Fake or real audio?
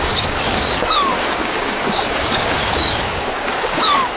fake